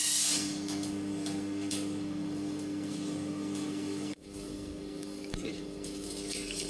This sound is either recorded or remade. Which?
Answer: remade